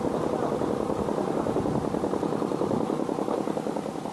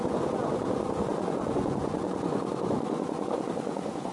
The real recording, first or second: first